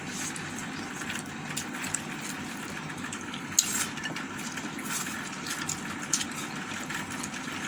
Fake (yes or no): no